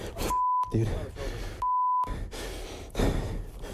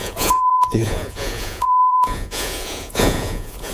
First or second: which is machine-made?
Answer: second